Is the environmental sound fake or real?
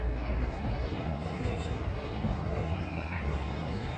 fake